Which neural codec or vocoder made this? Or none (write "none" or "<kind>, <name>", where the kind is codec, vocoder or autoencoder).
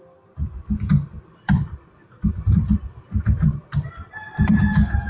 vocoder, BigVGAN v2